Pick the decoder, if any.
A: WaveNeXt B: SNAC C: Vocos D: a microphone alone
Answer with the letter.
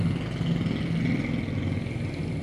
D